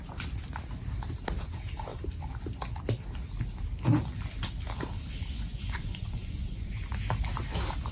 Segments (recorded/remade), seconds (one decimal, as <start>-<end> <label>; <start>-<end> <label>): 0.0-5.5 recorded; 5.5-6.8 remade; 6.8-7.9 recorded